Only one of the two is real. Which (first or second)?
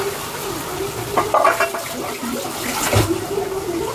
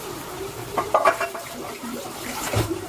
first